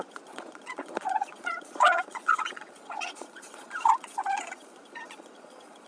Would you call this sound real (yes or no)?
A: no